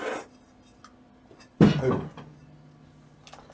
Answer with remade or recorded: recorded